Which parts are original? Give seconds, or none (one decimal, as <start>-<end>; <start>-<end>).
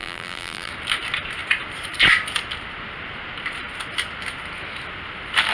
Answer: 0.7-5.5